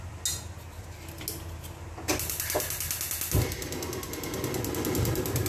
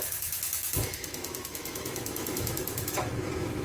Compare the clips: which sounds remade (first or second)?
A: second